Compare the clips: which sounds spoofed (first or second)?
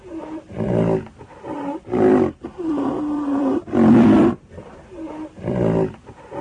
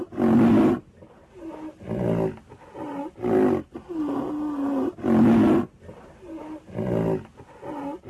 first